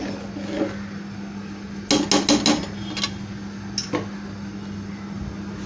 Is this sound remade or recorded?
recorded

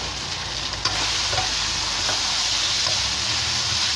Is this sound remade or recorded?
recorded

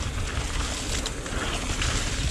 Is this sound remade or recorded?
recorded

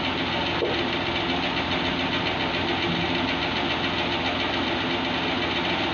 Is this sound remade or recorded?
recorded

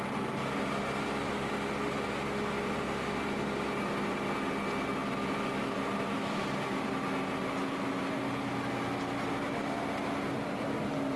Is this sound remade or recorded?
recorded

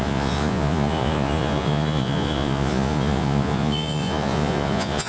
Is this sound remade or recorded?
remade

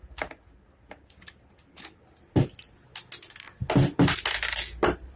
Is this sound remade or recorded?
recorded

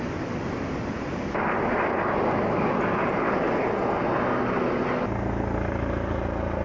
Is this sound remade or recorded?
recorded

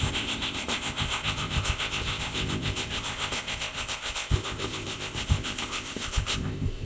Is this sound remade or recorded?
remade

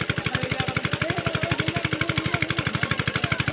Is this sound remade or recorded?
recorded